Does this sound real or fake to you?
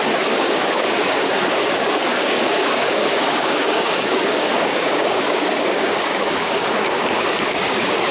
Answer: fake